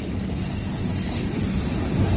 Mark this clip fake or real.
real